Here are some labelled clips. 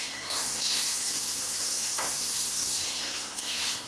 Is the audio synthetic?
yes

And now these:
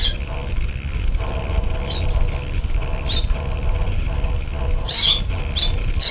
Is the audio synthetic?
no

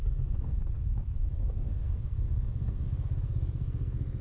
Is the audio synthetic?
yes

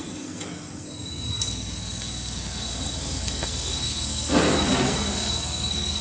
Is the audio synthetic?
yes